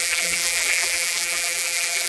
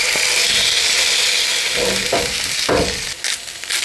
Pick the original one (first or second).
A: second